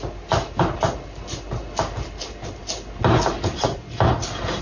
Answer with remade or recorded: recorded